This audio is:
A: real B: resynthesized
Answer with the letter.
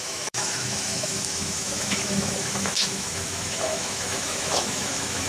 B